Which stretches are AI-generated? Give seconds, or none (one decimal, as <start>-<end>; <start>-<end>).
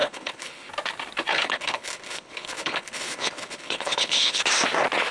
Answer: 0.0-0.7; 1.3-4.4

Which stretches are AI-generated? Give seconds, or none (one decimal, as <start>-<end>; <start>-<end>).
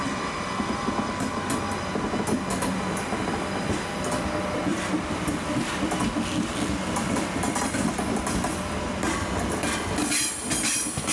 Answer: none